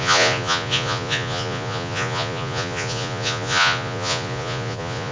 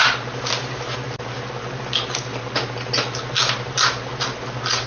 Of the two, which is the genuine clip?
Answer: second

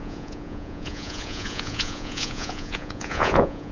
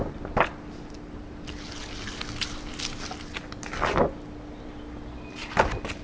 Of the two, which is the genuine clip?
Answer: second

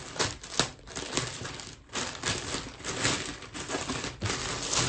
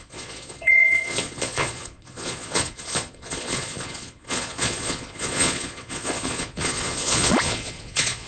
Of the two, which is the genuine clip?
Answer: first